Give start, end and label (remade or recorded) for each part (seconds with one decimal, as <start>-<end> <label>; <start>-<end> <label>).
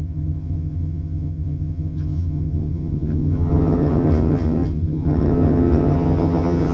0.0-6.7 remade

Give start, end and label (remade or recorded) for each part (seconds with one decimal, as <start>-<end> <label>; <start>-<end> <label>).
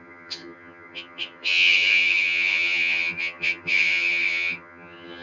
0.0-5.2 remade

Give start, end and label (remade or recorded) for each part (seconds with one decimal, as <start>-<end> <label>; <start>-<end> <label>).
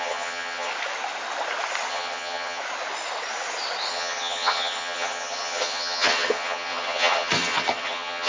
0.0-0.7 remade; 0.7-1.9 recorded; 1.9-2.6 remade; 2.6-3.9 recorded; 3.9-8.3 remade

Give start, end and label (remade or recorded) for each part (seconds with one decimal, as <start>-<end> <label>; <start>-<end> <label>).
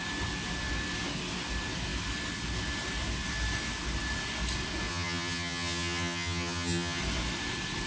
0.0-4.9 recorded; 4.9-7.0 remade; 7.0-7.9 recorded